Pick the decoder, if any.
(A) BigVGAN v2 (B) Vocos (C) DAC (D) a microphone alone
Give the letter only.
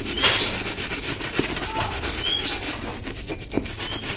D